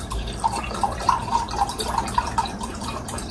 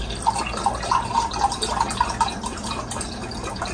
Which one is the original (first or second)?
second